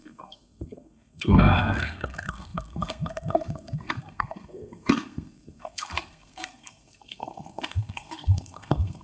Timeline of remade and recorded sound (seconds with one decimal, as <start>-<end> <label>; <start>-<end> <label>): 0.0-9.0 remade